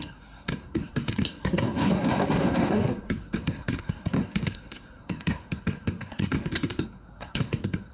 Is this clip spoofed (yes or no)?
yes